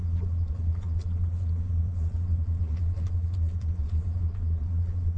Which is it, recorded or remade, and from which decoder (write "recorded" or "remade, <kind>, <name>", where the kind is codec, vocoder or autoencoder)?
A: remade, vocoder, Vocos